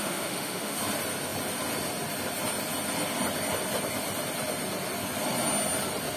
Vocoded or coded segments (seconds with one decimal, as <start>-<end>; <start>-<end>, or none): 0.0-0.8